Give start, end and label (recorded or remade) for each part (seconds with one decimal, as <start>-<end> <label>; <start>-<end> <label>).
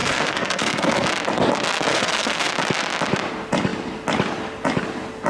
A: 0.0-1.1 remade; 1.1-1.9 recorded; 1.9-2.5 remade; 2.5-5.3 recorded